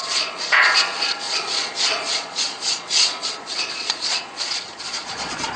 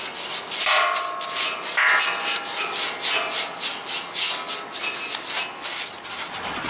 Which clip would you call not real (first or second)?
first